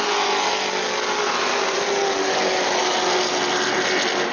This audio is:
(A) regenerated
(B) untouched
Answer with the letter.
B